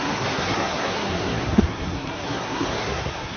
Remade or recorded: remade